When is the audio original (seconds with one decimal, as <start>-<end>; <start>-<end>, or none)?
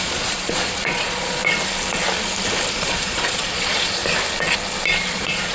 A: 1.4-2.7; 4.0-5.1